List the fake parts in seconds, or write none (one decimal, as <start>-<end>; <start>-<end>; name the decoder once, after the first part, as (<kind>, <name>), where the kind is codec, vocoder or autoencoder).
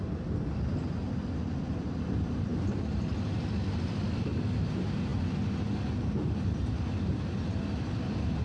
none